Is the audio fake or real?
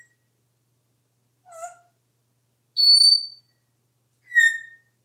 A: real